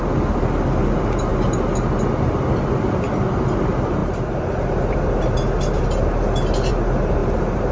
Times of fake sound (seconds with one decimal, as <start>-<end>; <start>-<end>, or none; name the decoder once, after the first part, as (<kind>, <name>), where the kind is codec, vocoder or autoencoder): none